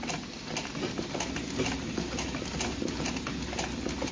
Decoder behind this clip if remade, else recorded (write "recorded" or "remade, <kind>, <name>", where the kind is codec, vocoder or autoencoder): recorded